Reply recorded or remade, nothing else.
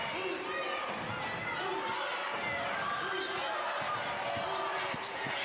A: recorded